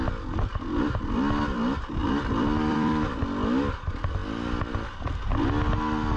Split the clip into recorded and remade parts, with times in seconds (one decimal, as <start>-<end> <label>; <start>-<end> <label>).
0.0-0.5 recorded; 0.5-1.0 remade; 1.0-2.0 recorded; 2.0-3.2 remade; 3.2-6.2 recorded